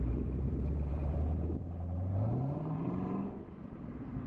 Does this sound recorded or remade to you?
remade